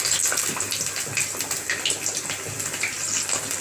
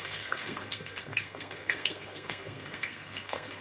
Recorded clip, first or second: first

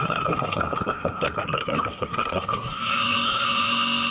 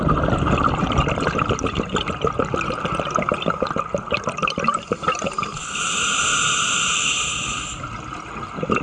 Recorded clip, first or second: second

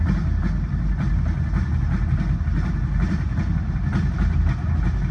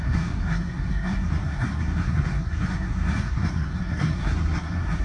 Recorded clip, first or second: first